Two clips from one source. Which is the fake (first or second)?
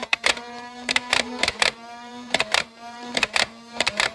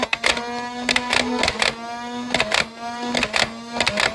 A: first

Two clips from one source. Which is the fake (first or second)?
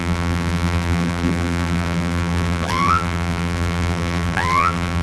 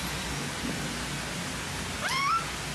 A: first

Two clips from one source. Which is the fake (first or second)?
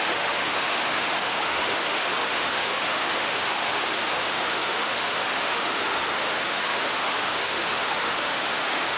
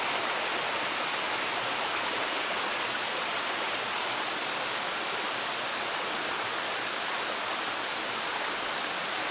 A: first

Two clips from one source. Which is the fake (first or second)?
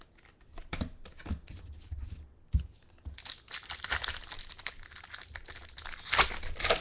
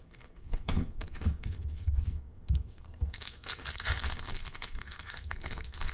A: second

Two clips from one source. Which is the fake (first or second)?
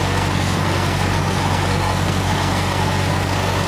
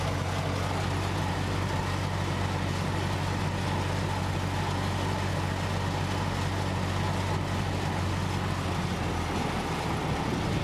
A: first